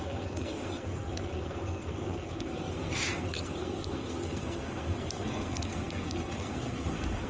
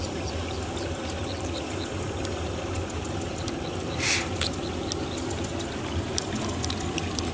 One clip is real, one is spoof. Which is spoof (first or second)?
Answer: first